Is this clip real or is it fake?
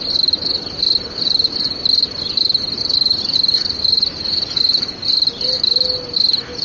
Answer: real